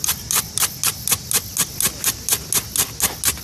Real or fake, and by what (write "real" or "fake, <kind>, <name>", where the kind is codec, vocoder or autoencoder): real